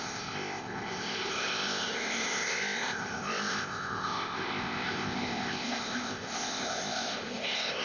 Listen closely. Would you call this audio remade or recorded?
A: remade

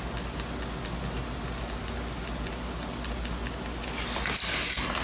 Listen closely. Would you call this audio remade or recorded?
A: recorded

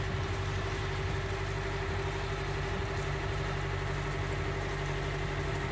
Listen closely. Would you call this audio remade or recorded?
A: recorded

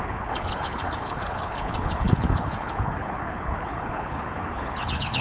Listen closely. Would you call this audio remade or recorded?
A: remade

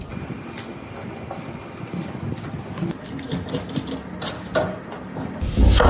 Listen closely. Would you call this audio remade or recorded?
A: recorded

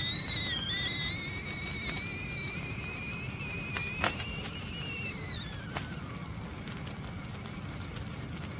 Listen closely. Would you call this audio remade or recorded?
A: recorded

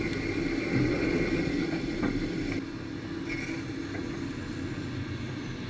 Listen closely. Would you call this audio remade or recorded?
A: recorded